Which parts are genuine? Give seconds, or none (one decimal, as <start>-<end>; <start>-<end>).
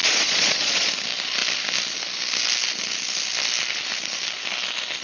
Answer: 0.9-5.0